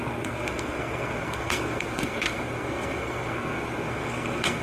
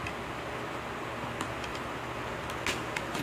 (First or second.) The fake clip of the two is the first